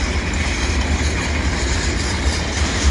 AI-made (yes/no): no